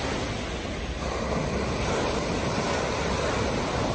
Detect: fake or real real